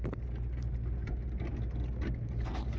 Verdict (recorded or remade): recorded